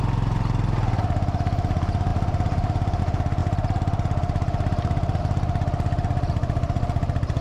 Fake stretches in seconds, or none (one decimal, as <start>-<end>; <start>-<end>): none